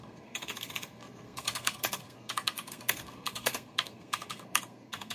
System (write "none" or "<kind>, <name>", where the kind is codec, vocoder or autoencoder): codec, SNAC